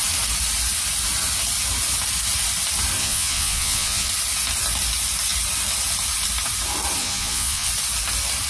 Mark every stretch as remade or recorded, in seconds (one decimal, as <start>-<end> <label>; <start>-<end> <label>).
0.0-3.0 recorded; 3.0-4.1 remade; 4.1-7.0 recorded; 7.0-7.7 remade; 7.7-8.5 recorded